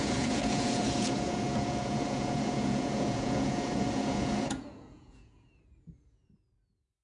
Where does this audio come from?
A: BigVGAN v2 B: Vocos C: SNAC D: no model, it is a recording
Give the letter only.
B